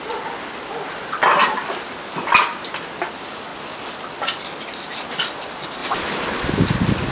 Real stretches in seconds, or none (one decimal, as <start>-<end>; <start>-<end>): 0.0-7.1